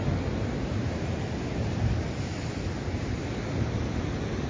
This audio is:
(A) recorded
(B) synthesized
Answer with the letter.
A